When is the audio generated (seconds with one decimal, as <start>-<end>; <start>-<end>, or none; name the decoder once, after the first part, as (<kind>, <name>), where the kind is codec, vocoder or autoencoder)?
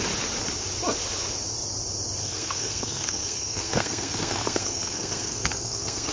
2.2-6.1 (codec, SNAC)